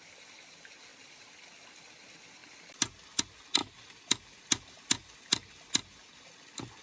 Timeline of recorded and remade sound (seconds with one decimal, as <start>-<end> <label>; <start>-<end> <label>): 0.0-0.9 recorded; 0.9-1.4 remade; 1.4-6.8 recorded

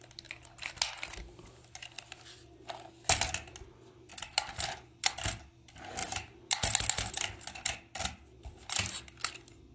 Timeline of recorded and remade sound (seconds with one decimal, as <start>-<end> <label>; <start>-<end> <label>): 0.0-9.7 recorded

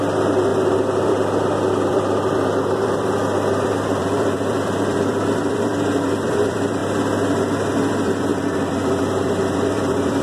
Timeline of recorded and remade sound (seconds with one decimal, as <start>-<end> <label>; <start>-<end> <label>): 0.0-0.5 remade; 0.5-1.1 recorded; 1.1-6.8 remade; 6.8-7.9 recorded; 7.9-10.2 remade

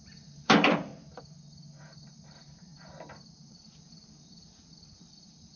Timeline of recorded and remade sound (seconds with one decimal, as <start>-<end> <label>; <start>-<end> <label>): 0.0-0.9 remade; 0.9-1.8 recorded; 1.8-2.7 remade; 2.7-3.4 recorded; 3.4-5.6 remade

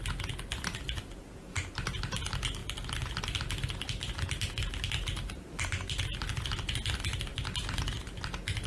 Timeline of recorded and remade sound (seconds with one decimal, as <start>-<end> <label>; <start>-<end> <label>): 0.0-8.7 recorded